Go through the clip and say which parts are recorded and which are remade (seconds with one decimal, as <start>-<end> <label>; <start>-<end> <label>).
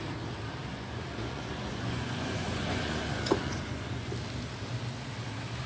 0.0-0.7 recorded; 0.7-4.1 remade; 4.1-5.7 recorded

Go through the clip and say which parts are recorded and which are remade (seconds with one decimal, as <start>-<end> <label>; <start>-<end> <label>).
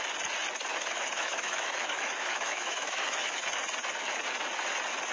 0.0-0.7 recorded; 0.7-3.4 remade; 3.4-5.1 recorded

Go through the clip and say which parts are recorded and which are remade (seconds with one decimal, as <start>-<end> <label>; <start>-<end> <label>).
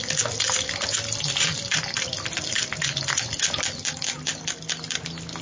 0.0-5.4 recorded